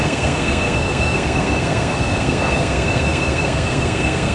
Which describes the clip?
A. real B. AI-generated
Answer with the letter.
B